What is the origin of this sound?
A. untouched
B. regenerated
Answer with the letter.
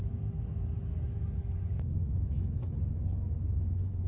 B